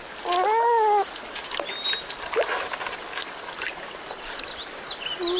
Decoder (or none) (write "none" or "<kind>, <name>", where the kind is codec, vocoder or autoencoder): none